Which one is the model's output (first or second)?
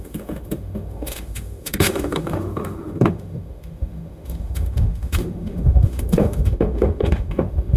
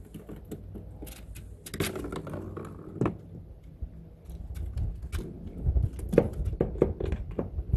first